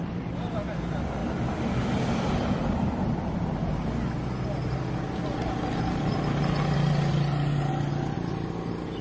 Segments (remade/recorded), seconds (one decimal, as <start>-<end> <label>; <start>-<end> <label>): 0.0-9.0 recorded